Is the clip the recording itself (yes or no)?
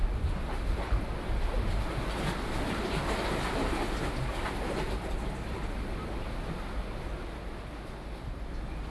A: yes